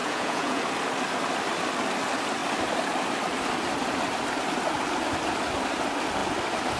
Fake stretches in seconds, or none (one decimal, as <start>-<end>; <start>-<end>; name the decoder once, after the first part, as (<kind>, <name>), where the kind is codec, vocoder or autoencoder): 0.0-0.6 (vocoder, Vocos)